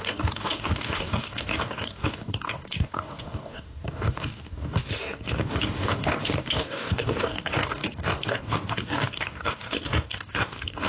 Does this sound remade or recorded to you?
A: remade